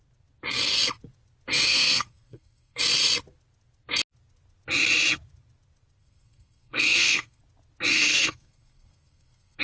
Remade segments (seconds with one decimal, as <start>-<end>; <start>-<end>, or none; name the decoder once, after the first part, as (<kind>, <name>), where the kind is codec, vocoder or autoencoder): 1.7-2.8 (codec, SNAC); 6.0-7.4; 7.9-9.6